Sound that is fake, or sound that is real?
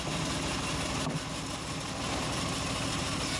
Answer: real